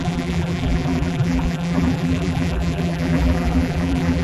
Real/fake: fake